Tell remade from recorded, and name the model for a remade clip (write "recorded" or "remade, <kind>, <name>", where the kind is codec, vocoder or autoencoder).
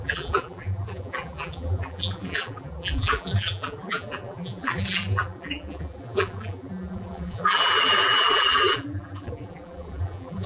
remade, vocoder, BigVGAN v2